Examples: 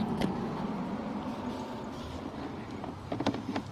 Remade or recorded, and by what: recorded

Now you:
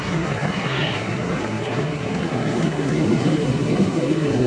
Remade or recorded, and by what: remade, codec, SNAC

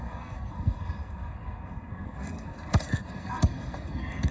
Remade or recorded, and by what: remade, codec, SNAC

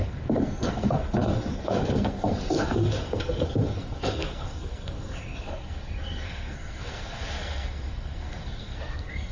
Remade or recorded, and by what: remade, codec, SNAC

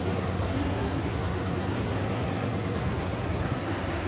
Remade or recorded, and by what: remade, codec, SNAC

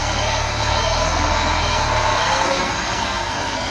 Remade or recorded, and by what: remade, codec, SNAC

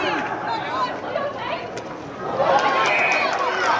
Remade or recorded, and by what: recorded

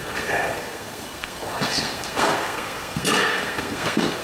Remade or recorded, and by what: remade, codec, SNAC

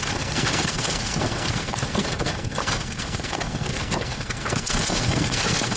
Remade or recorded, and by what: remade, codec, SNAC